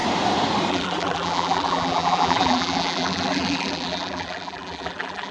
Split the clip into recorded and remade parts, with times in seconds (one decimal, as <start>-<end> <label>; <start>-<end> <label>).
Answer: 0.0-0.7 recorded; 0.7-5.3 remade